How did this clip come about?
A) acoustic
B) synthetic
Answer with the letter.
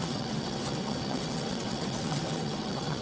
B